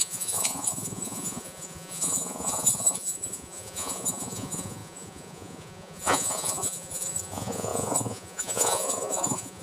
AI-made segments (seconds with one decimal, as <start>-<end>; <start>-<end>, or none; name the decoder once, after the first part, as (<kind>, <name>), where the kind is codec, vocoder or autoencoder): 0.0-9.6 (vocoder, Vocos)